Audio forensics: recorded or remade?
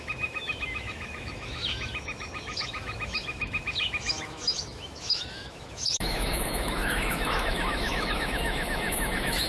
remade